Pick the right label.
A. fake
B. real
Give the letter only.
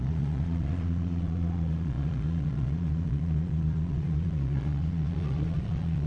A